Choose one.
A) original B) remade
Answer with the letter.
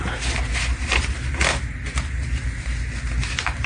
A